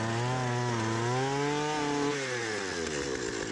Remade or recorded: recorded